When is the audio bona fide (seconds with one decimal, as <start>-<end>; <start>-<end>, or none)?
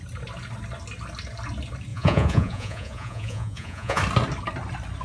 0.0-1.9; 4.0-5.0